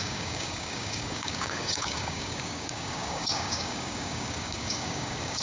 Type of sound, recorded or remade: remade